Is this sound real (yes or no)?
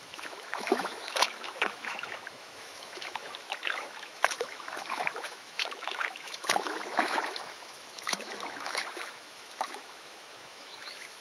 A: no